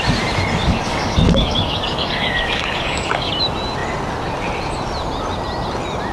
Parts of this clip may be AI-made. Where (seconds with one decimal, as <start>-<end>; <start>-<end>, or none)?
0.6-3.3